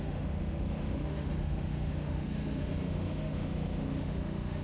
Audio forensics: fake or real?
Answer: fake